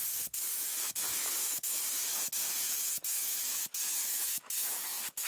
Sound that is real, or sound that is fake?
fake